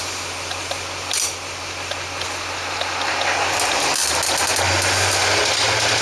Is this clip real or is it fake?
real